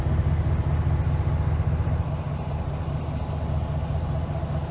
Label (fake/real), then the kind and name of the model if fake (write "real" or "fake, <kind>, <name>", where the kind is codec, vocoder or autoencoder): real